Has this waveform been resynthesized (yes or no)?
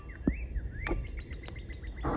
no